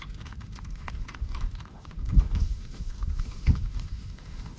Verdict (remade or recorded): remade